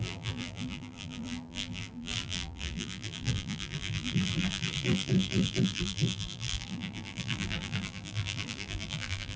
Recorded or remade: remade